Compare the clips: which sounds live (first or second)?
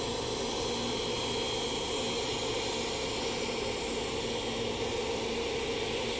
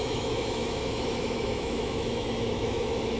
first